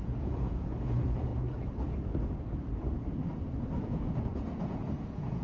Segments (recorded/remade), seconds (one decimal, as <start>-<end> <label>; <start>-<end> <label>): 0.0-1.3 remade; 1.3-3.8 recorded; 3.8-5.4 remade